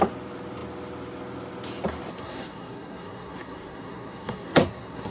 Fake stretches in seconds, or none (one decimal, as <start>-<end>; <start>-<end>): 2.1-5.1